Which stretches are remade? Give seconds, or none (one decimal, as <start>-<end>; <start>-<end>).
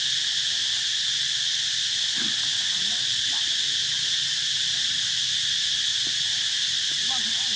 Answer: 5.9-7.0